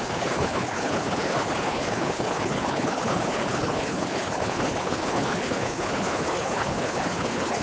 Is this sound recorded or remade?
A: remade